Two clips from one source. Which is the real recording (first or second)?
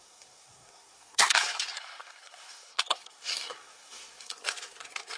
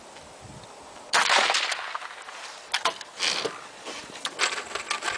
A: second